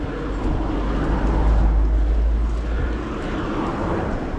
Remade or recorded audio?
recorded